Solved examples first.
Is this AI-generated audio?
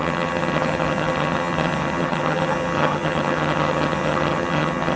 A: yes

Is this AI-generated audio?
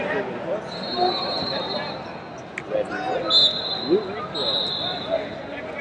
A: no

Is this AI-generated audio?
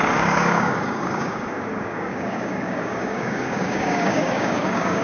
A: yes